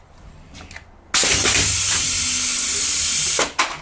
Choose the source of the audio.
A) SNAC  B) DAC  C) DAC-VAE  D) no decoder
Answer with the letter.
D